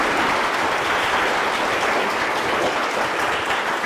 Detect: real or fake real